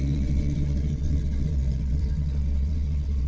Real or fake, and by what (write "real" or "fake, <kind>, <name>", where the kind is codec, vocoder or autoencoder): fake, vocoder, WaveNeXt